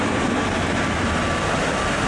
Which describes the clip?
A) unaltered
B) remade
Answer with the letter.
B